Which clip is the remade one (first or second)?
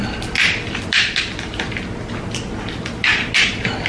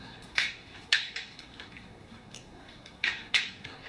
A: second